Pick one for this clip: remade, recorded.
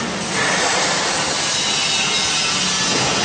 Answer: recorded